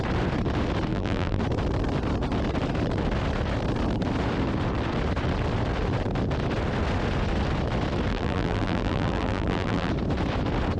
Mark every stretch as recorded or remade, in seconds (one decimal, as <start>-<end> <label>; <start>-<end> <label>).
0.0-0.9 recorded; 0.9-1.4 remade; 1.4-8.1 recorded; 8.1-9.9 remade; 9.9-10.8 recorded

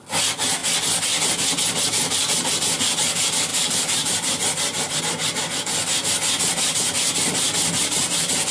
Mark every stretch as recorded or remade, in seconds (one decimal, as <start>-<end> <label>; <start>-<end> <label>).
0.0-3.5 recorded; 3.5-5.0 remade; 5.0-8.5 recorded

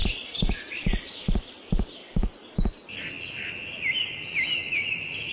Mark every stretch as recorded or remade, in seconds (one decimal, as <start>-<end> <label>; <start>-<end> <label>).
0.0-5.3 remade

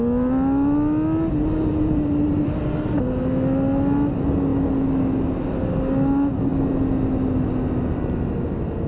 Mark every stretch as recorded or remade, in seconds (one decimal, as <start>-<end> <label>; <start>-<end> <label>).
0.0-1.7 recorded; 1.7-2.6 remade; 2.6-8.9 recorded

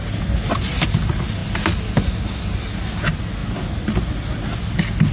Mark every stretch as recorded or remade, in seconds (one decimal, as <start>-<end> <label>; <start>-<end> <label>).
0.0-5.1 recorded

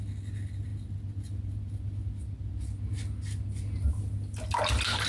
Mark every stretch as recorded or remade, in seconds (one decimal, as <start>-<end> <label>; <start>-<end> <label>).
0.0-5.1 recorded

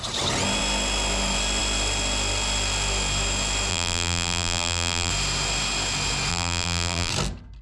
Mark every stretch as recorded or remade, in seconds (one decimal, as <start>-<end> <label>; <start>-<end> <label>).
0.0-3.7 recorded; 3.7-5.1 remade; 5.1-6.3 recorded; 6.3-7.1 remade; 7.1-7.6 recorded